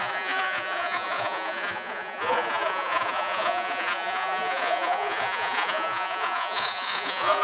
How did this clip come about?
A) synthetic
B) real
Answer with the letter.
A